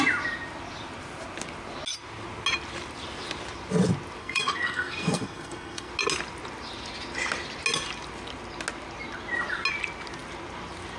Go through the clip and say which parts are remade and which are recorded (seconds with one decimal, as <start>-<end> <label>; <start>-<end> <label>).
0.0-4.2 recorded; 4.2-5.9 remade; 5.9-11.0 recorded